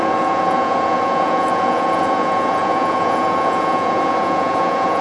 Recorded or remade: remade